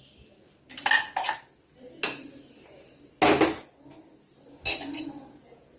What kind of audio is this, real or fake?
real